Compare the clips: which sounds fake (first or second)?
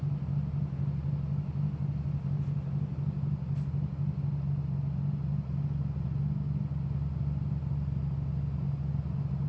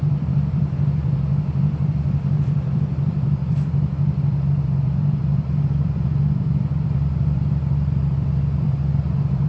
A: second